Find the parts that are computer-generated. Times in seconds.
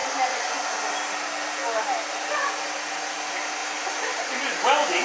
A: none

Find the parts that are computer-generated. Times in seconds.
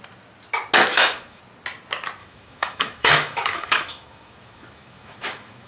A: 0.9-1.4; 2.2-5.7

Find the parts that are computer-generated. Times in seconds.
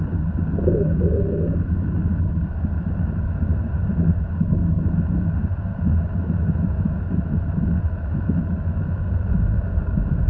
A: none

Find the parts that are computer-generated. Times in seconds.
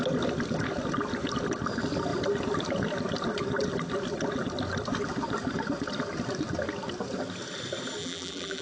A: 8.0-8.6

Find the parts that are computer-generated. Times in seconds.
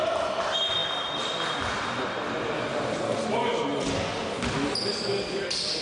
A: none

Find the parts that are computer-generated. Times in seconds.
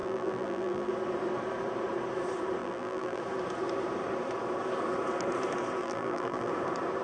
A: 0.0-0.9; 2.6-3.2; 5.8-6.5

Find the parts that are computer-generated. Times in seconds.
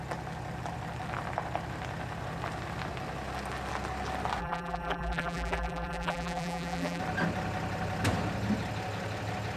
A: 4.4-7.0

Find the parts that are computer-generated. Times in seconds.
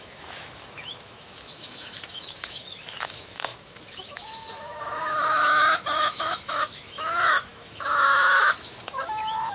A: 0.0-9.5